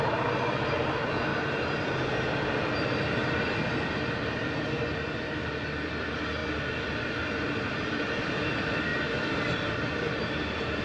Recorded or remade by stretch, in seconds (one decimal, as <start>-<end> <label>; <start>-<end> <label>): 0.0-10.8 recorded